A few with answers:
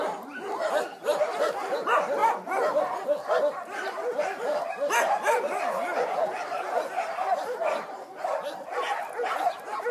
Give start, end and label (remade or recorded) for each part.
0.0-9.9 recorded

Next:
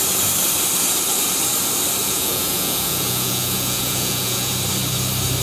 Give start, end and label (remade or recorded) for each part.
0.0-2.0 recorded; 2.0-4.5 remade; 4.5-5.4 recorded

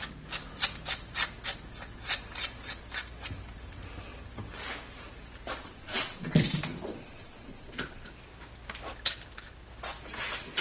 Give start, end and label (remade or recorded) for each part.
0.0-5.6 recorded; 5.6-6.5 remade; 6.5-6.9 recorded; 6.9-8.1 remade; 8.1-10.6 recorded

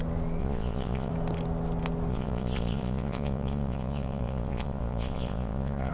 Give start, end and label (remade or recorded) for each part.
0.0-0.4 recorded; 0.4-1.1 remade; 1.1-2.1 recorded; 2.1-5.9 remade

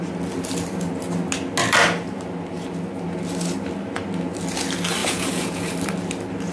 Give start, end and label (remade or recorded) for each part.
0.0-5.0 recorded; 5.0-5.7 remade; 5.7-6.5 recorded

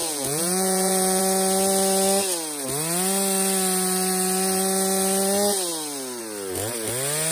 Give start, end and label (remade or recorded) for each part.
0.0-1.2 remade; 1.2-7.3 recorded